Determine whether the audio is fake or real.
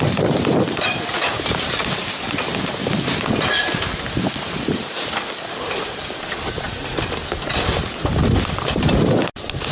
real